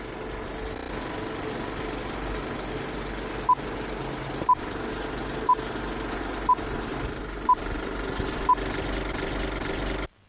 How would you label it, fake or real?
real